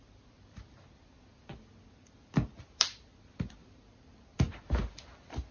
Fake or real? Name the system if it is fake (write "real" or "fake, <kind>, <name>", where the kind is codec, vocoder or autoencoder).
real